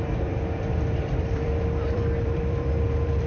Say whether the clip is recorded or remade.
remade